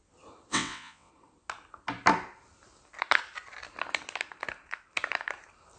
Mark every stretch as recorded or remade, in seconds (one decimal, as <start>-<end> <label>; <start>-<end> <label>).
0.0-0.5 recorded; 0.5-1.1 remade; 1.1-5.8 recorded